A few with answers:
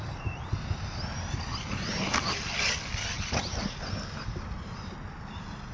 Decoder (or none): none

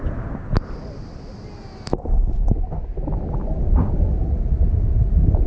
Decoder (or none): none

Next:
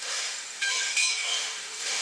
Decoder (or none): autoencoder, DAC-VAE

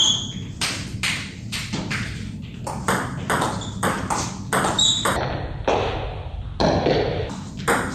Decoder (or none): none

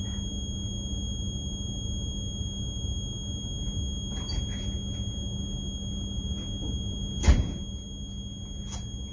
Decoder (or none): none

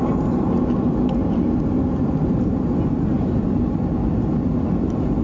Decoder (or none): none